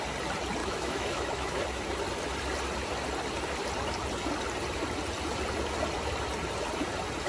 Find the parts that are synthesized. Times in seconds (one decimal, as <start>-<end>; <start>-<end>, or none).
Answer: 0.6-1.6